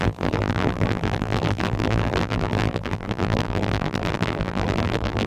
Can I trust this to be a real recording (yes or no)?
no